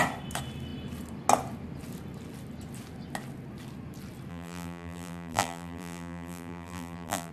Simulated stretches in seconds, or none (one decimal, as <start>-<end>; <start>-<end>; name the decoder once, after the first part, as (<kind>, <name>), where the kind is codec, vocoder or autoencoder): 4.3-7.3 (vocoder, BigVGAN v2)